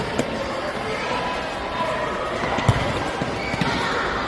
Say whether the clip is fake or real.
fake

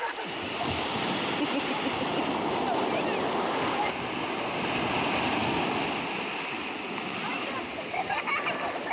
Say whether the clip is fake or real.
real